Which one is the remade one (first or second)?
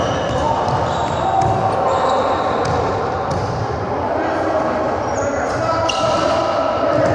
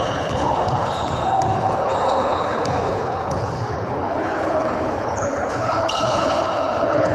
second